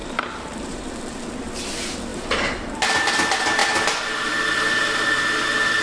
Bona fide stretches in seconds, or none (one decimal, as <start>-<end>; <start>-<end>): 0.8-2.1; 3.1-5.8